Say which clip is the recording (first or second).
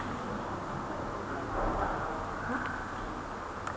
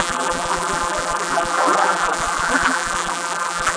first